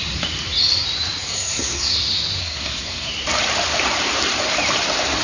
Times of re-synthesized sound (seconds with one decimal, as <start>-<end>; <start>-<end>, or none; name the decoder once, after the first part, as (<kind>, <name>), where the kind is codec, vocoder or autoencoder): 1.3-1.9 (codec, SNAC); 2.4-3.1